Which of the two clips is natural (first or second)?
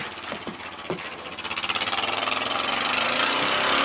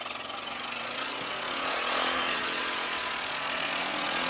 first